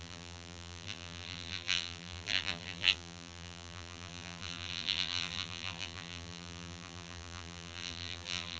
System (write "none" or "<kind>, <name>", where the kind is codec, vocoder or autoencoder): vocoder, BigVGAN v2